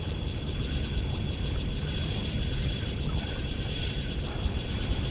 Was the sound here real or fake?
fake